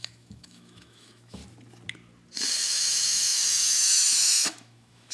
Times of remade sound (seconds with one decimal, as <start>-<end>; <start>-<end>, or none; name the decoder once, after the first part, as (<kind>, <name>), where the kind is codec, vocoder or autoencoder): 0.0-1.4 (autoencoder, DAC-VAE); 2.5-5.1